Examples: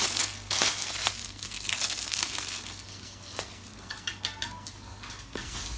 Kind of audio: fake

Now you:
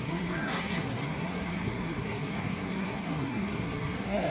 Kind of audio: fake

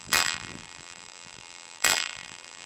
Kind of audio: fake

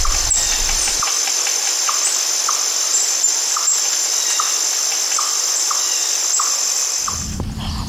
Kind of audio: real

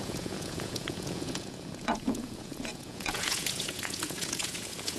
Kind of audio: fake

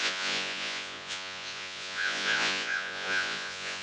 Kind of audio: fake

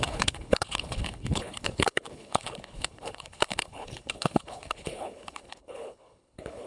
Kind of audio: fake